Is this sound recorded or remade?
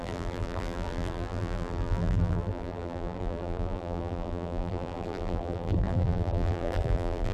remade